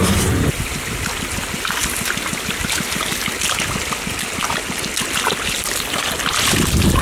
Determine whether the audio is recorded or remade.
recorded